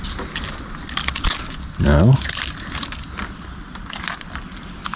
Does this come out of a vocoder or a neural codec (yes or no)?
no